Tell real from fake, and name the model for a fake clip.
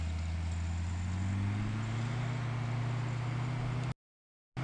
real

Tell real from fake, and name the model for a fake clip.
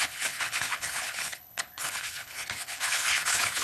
fake, codec, HILCodec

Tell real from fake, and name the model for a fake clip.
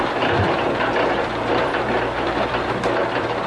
fake, vocoder, BigVGAN v2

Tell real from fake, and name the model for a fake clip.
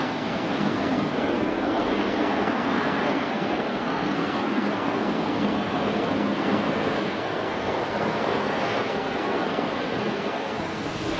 fake, codec, SNAC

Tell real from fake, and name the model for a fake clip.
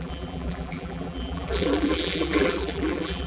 fake, vocoder, BigVGAN v2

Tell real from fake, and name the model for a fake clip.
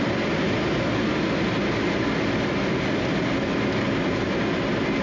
real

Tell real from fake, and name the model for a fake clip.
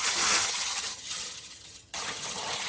fake, vocoder, HiFi-GAN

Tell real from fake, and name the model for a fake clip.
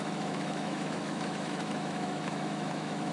fake, autoencoder, DAC-VAE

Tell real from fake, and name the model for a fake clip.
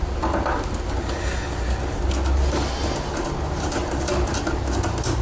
real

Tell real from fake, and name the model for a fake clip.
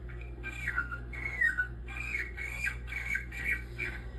fake, codec, SNAC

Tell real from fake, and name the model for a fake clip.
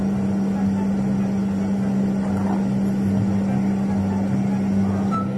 real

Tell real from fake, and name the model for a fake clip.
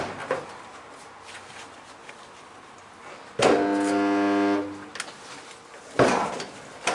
real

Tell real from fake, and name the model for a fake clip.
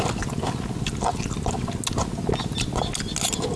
real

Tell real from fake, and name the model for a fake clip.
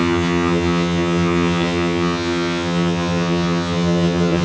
fake, vocoder, HiFi-GAN